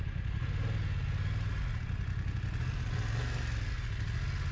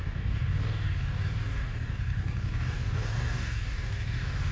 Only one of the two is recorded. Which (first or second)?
first